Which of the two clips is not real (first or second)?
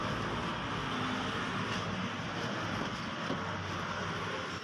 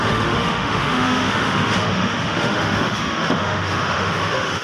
second